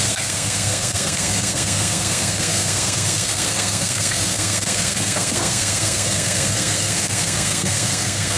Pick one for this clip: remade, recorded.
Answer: remade